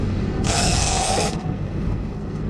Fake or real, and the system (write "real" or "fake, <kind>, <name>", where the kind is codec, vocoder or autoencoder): fake, codec, SNAC